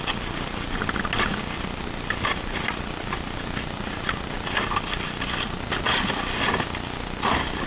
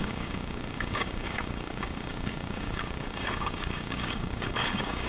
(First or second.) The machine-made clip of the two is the second